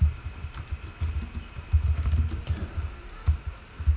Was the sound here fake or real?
real